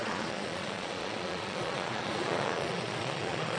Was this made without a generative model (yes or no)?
no